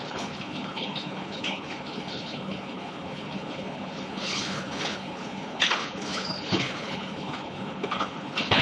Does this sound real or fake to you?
fake